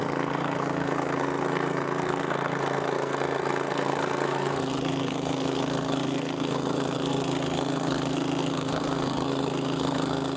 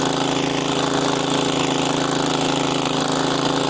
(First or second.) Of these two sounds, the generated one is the first